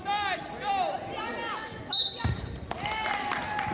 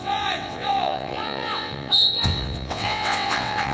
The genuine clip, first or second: first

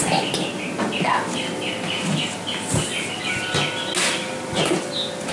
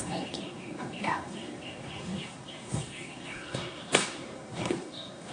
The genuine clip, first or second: first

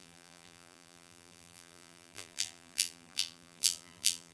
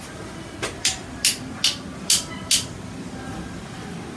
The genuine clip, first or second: second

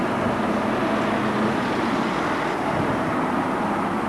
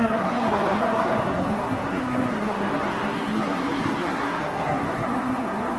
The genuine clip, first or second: first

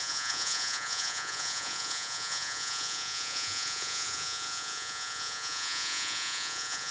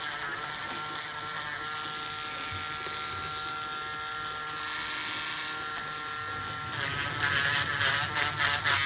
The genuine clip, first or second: second